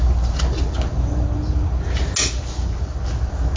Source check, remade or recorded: recorded